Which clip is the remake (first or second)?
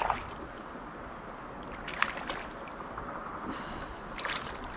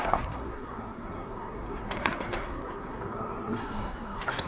second